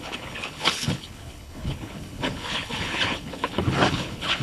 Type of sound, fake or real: fake